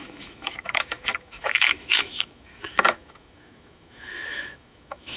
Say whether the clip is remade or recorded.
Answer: remade